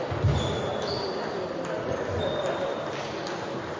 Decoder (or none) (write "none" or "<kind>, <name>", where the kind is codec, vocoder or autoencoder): none